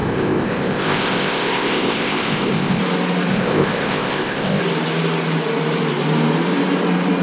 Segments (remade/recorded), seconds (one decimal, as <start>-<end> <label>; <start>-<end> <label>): 0.0-2.8 remade; 2.8-3.3 recorded; 3.3-4.6 remade; 4.6-7.2 recorded